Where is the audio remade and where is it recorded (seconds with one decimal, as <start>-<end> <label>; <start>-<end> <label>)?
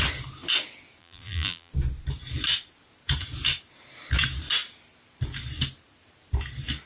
0.0-1.0 recorded; 1.0-1.7 remade; 1.7-6.9 recorded